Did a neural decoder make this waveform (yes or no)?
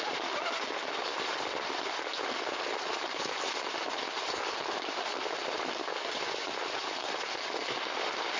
no